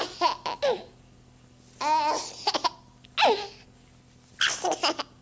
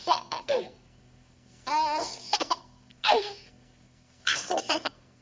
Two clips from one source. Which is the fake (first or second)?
second